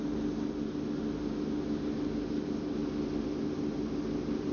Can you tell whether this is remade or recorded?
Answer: recorded